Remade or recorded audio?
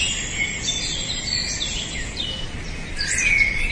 recorded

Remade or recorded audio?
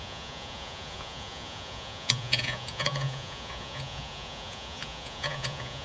remade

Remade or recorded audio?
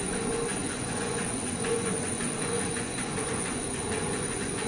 remade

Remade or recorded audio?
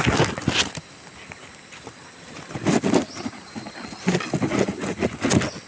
recorded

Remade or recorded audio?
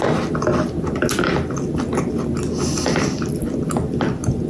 recorded